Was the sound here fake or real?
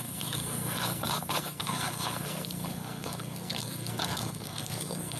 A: fake